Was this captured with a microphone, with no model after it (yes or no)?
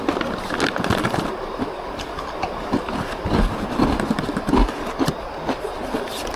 yes